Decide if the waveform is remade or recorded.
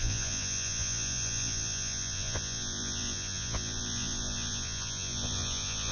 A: remade